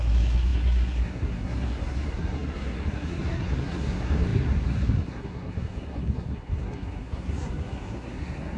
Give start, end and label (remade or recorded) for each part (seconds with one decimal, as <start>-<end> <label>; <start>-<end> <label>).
0.0-8.6 remade